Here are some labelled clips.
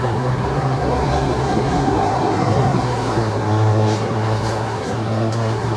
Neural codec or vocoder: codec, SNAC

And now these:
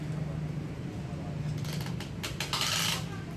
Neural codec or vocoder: none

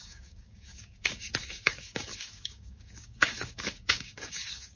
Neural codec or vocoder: codec, DAC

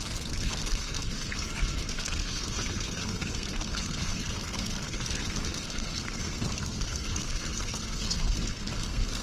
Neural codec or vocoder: codec, SNAC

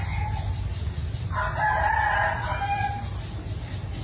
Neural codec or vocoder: none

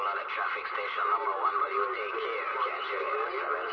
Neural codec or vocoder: none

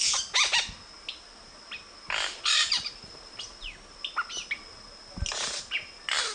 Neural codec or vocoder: none